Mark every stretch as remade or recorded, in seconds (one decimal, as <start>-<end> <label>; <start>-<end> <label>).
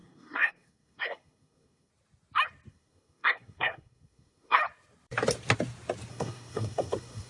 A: 0.0-1.9 remade; 1.9-2.7 recorded; 2.7-4.6 remade; 4.6-6.1 recorded; 6.1-7.3 remade